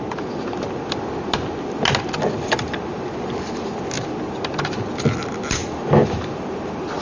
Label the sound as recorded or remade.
recorded